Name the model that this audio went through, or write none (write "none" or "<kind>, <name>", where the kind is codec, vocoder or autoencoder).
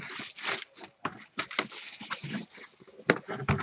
none